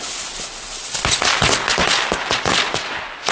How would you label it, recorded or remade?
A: recorded